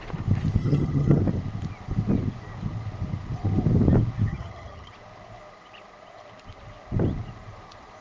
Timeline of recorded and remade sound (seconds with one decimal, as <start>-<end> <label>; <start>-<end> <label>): 0.0-0.6 recorded; 0.6-1.2 remade; 1.2-4.3 recorded; 4.3-4.9 remade; 4.9-8.0 recorded